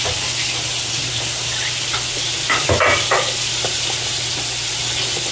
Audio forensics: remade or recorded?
recorded